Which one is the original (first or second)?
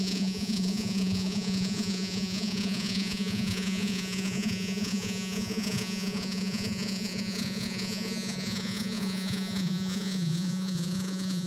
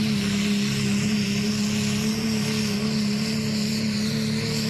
second